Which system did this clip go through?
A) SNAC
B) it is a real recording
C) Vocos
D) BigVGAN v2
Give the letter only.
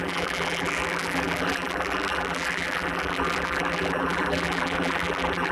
D